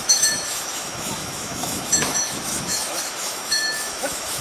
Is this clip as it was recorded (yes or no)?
no